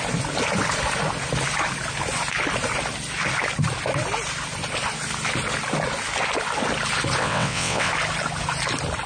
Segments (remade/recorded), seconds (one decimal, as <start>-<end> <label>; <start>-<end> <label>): 0.0-7.2 recorded; 7.2-7.9 remade; 7.9-9.1 recorded